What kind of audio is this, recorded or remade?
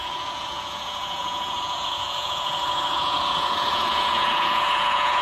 remade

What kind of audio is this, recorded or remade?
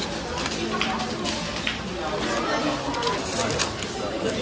recorded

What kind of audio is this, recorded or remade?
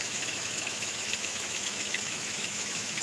remade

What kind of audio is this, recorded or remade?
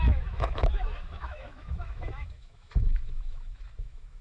remade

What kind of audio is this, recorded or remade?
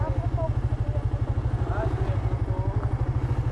recorded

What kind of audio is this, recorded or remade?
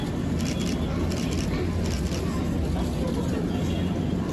recorded